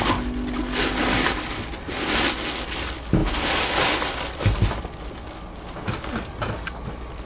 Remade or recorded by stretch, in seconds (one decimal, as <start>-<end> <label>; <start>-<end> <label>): 0.0-3.2 recorded; 3.2-4.8 remade; 4.8-7.2 recorded